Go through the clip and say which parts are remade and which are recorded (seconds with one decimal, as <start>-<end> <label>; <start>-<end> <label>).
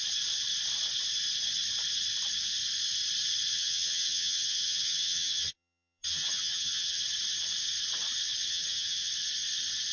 0.0-3.5 recorded; 3.5-7.0 remade; 7.0-8.5 recorded; 8.5-9.1 remade; 9.1-9.9 recorded